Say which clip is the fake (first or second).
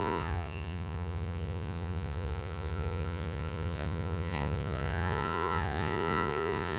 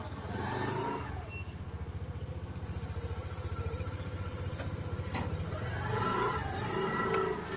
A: first